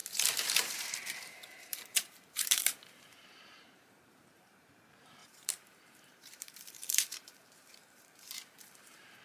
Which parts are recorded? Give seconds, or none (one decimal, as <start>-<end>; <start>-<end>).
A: none